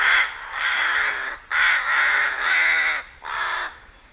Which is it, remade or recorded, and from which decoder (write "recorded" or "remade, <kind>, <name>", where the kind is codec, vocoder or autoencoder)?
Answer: recorded